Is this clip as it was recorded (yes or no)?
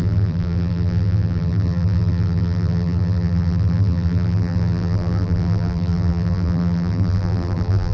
no